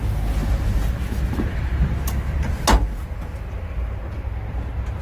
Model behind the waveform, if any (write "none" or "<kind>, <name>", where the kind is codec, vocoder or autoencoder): none